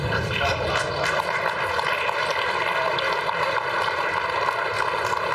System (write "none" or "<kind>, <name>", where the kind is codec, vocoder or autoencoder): vocoder, BigVGAN v2